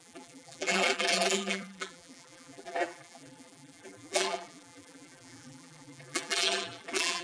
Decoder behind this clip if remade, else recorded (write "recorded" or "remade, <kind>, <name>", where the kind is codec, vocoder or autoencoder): remade, vocoder, BigVGAN v2